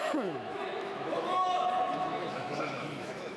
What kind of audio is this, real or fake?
fake